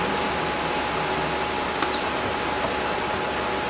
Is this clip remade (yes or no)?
no